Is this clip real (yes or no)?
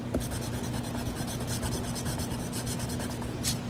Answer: yes